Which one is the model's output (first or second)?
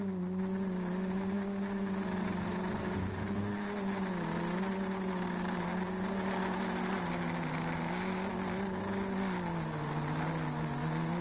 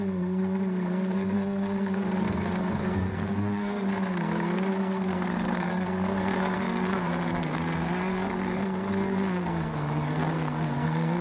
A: second